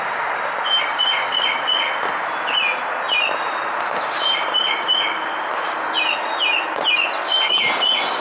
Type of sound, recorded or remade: recorded